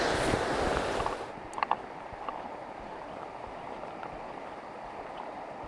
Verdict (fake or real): real